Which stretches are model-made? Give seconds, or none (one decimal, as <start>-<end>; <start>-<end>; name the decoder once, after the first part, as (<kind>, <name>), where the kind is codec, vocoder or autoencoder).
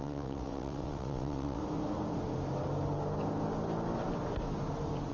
0.0-1.6 (vocoder, WaveNeXt)